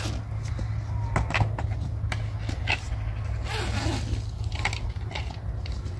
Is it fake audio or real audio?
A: real